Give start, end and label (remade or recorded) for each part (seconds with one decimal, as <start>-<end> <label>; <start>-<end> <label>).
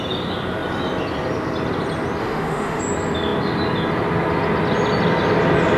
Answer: 0.0-2.2 recorded; 2.2-2.8 remade; 2.8-5.8 recorded